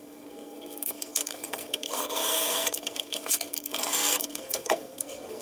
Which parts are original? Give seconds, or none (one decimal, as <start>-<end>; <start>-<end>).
none

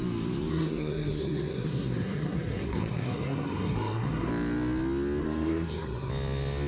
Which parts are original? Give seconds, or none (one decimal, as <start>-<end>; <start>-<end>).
0.0-0.5; 4.3-5.2; 6.1-6.7

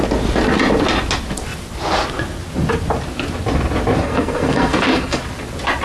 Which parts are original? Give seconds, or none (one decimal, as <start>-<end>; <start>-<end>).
0.0-4.0; 5.2-5.8